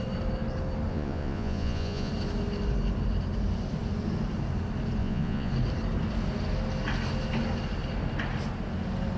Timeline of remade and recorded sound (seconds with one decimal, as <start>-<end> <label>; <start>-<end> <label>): 0.0-0.9 recorded; 0.9-2.1 remade; 2.1-5.0 recorded; 5.0-5.5 remade; 5.5-9.2 recorded